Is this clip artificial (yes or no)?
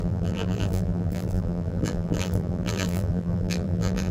yes